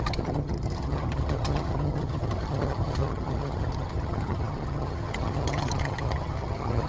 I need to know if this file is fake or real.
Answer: fake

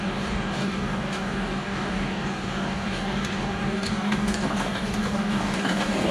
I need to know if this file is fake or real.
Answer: fake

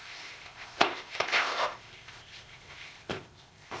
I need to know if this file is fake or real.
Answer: fake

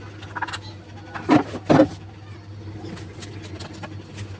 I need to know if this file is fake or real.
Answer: real